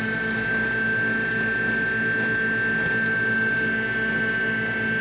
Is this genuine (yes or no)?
yes